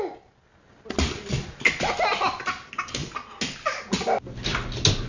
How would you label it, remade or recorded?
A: recorded